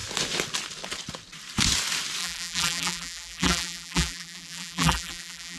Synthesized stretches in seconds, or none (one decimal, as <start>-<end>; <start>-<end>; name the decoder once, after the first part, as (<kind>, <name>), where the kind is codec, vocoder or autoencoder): 2.2-5.6 (vocoder, BigVGAN v2)